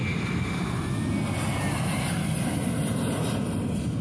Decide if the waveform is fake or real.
real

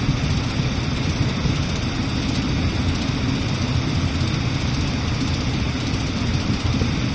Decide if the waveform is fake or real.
real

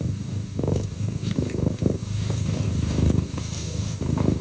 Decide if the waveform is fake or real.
fake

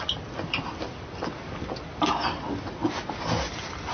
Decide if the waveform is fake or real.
real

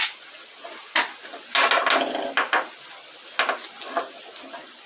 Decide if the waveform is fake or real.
real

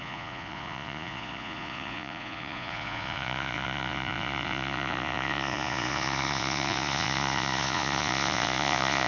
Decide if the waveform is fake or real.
fake